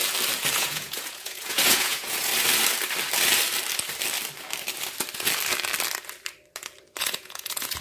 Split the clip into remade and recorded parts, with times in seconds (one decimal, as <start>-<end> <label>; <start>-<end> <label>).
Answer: 0.0-0.5 recorded; 0.5-2.3 remade; 2.3-7.0 recorded; 7.0-7.8 remade